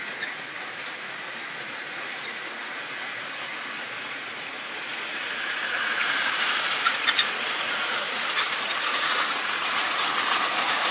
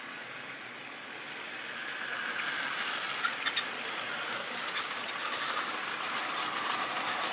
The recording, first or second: second